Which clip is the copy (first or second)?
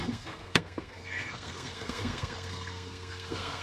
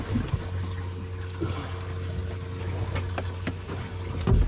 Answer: first